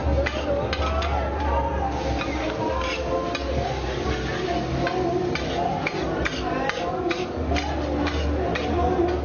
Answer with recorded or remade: recorded